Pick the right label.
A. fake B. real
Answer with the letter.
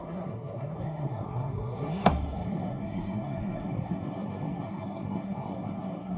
A